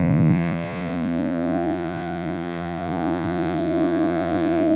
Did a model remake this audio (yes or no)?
yes